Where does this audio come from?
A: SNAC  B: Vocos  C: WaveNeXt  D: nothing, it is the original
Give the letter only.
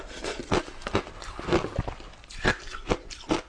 D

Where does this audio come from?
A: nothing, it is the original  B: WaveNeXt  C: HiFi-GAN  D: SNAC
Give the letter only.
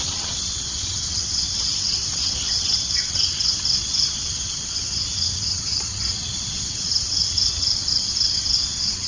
B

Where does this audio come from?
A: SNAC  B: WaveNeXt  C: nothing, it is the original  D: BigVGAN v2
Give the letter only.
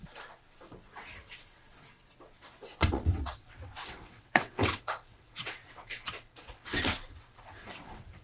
B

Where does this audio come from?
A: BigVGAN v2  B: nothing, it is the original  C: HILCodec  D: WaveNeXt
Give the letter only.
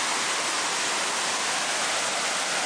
B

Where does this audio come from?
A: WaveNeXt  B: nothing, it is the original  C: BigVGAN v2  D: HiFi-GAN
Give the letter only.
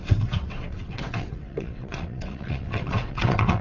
A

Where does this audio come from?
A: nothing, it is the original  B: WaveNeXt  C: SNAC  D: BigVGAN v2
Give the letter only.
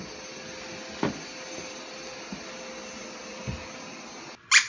A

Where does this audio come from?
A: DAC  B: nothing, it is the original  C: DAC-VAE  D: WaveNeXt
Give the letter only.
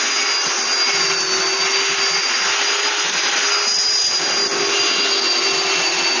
B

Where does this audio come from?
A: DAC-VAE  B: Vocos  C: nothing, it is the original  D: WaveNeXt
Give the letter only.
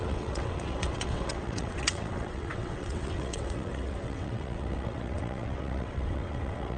D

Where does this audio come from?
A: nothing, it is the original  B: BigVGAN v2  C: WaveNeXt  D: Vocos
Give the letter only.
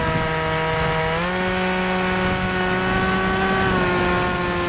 A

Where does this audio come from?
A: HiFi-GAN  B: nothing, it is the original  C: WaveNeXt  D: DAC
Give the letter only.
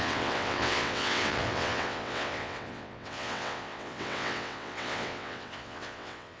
C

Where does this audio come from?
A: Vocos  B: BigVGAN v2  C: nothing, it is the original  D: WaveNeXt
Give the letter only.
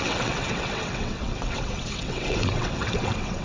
D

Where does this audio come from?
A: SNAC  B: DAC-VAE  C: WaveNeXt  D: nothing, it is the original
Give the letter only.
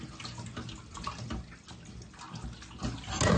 D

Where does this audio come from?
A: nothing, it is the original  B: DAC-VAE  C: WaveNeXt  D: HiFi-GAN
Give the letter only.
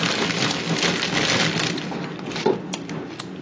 A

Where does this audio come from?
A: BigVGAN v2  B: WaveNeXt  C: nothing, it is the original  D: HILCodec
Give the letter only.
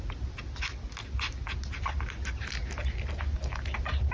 C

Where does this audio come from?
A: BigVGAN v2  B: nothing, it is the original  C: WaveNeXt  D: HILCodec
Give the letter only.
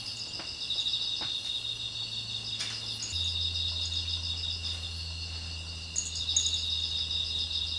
B